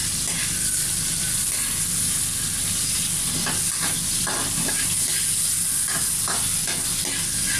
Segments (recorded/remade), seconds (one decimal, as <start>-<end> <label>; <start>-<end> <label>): 0.0-7.6 recorded